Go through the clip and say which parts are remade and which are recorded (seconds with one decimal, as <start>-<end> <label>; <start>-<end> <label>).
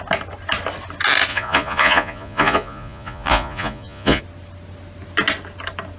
0.0-1.3 recorded; 1.3-4.2 remade; 4.2-6.0 recorded